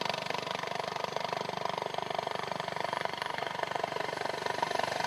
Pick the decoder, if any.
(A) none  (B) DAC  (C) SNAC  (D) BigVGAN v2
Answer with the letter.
A